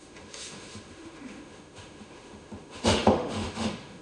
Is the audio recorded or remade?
remade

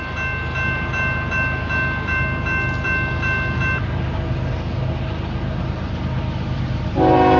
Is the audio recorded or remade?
recorded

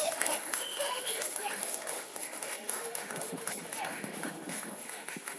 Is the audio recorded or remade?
remade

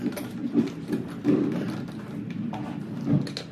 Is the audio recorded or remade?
recorded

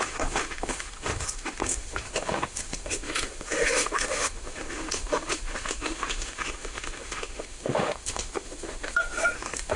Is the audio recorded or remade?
remade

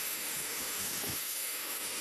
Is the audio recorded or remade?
remade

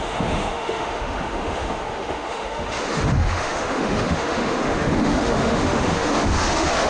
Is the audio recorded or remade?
remade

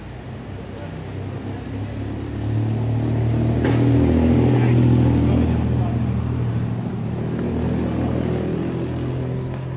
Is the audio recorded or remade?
recorded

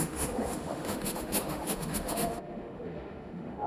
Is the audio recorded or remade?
remade